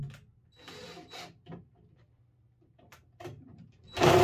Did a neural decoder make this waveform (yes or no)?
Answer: no